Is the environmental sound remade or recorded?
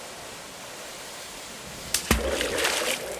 recorded